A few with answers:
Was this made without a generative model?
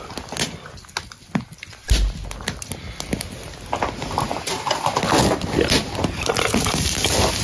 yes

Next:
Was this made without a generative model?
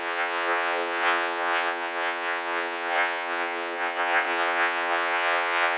no